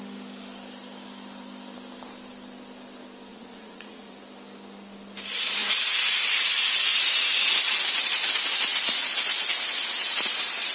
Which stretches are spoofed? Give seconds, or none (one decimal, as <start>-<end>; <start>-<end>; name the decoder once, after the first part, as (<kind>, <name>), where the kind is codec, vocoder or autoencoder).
3.3-4.1 (vocoder, Vocos); 5.6-7.3